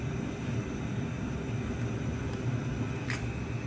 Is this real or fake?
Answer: real